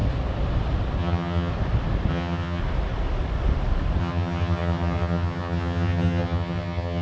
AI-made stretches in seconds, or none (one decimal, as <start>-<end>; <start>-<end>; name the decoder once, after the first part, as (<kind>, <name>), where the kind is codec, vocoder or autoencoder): 1.0-1.5 (vocoder, HiFi-GAN); 2.1-2.6; 4.0-7.0